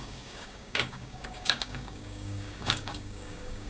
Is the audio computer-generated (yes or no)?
yes